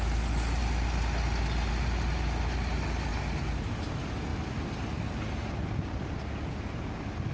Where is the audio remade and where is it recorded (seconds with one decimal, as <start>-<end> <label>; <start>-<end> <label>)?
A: 0.0-3.1 recorded; 3.1-3.7 remade; 3.7-4.3 recorded; 4.3-4.8 remade; 4.8-7.3 recorded